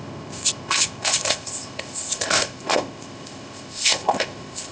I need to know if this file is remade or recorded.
remade